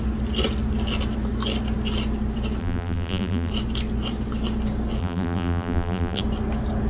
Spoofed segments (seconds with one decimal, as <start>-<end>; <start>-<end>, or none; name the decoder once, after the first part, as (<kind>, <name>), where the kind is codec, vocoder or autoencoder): 2.6-3.5 (vocoder, BigVGAN v2); 5.0-6.2